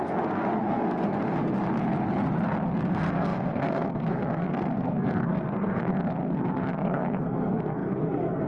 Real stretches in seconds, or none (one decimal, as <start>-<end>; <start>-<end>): 1.4-2.9